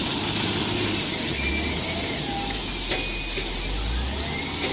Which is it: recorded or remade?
recorded